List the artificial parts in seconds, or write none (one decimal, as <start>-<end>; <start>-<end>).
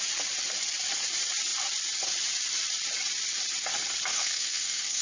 4.1-5.0